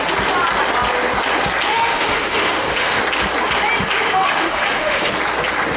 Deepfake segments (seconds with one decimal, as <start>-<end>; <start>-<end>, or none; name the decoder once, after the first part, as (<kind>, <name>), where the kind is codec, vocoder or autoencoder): 1.7-3.0 (autoencoder, DAC-VAE); 4.0-5.1